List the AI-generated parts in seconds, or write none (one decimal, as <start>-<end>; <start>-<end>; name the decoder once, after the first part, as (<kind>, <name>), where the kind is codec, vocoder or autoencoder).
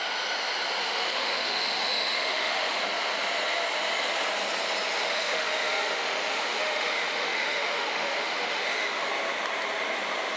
0.8-2.8 (autoencoder, DAC-VAE); 5.0-9.1